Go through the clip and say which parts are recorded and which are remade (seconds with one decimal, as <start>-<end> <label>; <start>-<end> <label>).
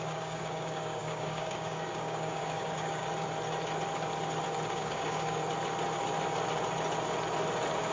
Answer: 0.0-3.0 remade; 3.0-4.7 recorded; 4.7-5.4 remade; 5.4-7.9 recorded